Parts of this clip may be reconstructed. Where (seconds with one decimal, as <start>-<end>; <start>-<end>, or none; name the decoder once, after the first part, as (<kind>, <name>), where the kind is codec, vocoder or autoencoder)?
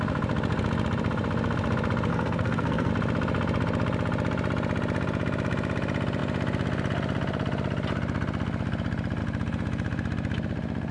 2.1-2.9 (codec, SNAC)